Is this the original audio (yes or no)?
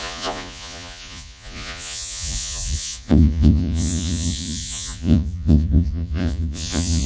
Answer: no